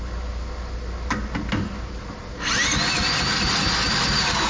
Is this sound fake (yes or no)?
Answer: no